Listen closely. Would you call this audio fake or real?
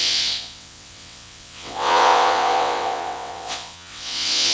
fake